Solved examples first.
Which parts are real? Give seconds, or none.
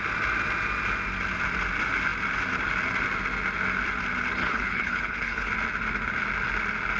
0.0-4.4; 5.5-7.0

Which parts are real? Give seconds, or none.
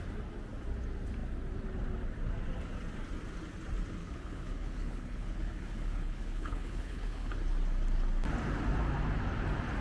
0.0-4.0; 7.3-9.8